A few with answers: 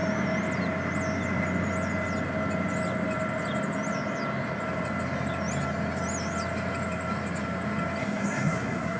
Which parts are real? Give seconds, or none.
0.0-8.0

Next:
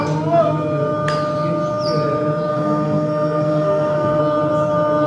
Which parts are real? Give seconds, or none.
0.0-2.5; 4.2-5.1

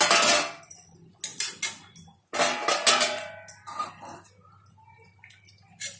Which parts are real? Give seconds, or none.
0.0-6.0

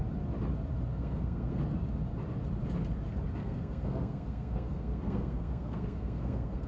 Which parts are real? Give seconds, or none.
0.0-0.9; 1.6-3.4

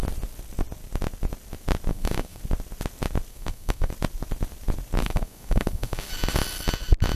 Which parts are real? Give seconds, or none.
0.0-1.9; 2.4-3.3; 3.9-5.0; 6.1-7.2

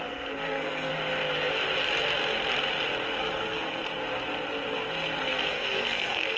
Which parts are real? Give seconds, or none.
0.9-3.2; 3.8-5.2

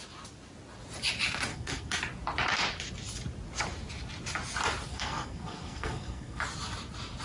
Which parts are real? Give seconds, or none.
0.0-1.5; 2.0-4.9; 6.4-7.2

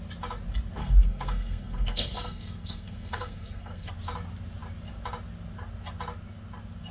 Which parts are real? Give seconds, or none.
0.0-0.8; 3.9-6.9